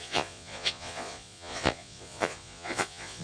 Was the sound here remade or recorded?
remade